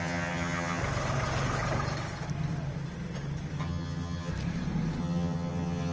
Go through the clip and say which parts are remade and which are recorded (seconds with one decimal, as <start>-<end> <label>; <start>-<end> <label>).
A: 0.0-0.8 remade; 0.8-3.6 recorded; 3.6-4.3 remade; 4.3-5.0 recorded; 5.0-5.9 remade